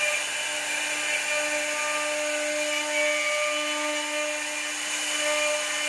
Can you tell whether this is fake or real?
real